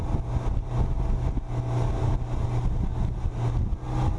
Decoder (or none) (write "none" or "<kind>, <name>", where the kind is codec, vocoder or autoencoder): none